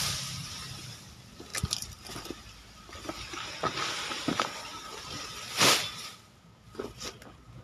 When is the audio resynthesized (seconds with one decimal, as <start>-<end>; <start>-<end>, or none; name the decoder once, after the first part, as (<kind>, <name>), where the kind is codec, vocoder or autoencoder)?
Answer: none